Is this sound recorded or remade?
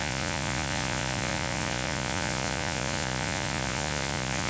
remade